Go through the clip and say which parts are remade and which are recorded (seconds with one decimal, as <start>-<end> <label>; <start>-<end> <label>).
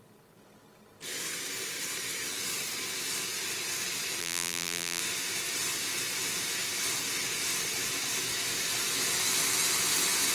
0.0-4.2 recorded; 4.2-5.0 remade; 5.0-10.3 recorded